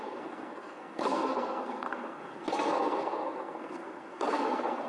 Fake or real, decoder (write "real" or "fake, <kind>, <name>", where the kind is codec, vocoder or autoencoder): fake, codec, SNAC